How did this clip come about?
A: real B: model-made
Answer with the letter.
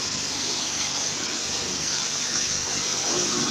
B